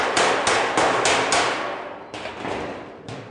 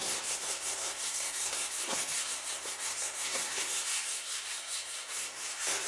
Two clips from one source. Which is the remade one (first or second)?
second